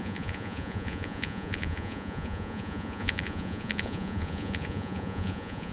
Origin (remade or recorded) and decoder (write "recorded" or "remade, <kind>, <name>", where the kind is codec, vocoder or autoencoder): remade, vocoder, Vocos